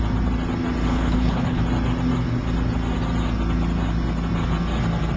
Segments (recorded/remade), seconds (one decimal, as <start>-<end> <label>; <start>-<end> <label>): 0.0-0.9 recorded; 0.9-1.6 remade; 1.6-5.2 recorded